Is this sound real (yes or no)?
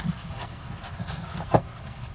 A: no